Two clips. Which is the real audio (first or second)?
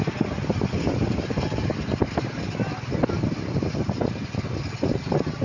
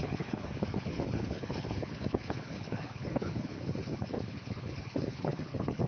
first